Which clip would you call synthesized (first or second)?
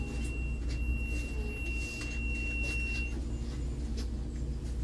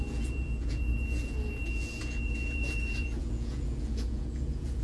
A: second